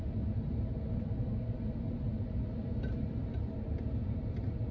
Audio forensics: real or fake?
real